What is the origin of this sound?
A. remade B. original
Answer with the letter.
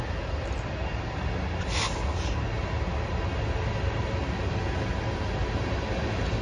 B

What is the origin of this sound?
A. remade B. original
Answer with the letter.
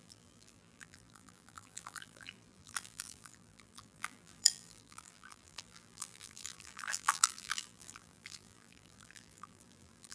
A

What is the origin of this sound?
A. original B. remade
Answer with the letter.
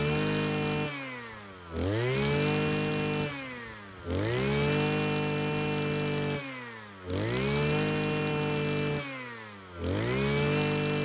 A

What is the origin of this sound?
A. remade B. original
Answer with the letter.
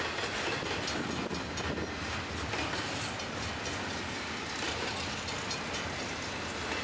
B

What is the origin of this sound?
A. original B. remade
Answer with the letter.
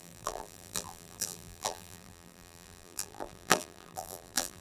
B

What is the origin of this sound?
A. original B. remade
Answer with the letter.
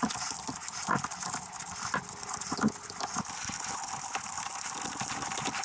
A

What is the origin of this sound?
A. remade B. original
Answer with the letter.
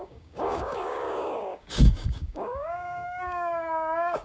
A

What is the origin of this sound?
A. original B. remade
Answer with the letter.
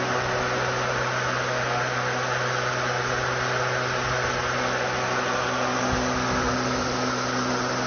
A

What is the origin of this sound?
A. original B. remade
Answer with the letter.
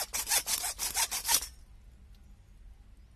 A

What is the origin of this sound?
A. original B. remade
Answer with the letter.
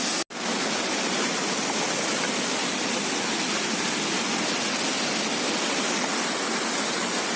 A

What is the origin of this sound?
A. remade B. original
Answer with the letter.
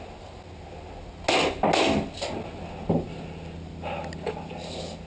B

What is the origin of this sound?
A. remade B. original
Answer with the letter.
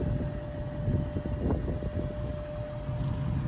B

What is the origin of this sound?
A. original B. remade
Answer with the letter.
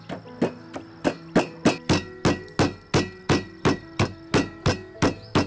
A